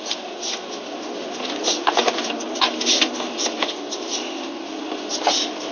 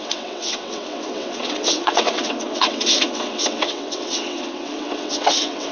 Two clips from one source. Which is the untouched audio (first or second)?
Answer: first